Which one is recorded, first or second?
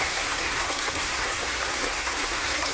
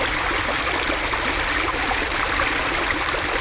second